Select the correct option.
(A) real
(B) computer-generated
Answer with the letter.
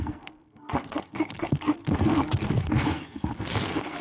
B